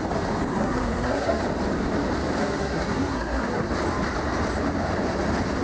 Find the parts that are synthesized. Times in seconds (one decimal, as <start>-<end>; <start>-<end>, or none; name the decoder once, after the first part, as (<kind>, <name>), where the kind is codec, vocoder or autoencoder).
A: 0.5-1.4 (codec, SNAC); 2.4-3.7